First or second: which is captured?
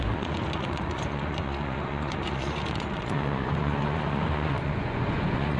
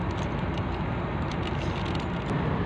second